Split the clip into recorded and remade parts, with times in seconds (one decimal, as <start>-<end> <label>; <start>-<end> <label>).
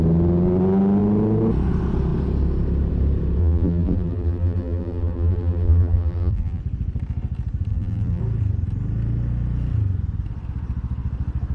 0.0-3.4 recorded; 3.4-6.6 remade; 6.6-7.7 recorded; 7.7-8.2 remade; 8.2-11.5 recorded